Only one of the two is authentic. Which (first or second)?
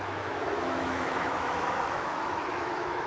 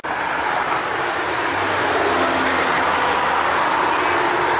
second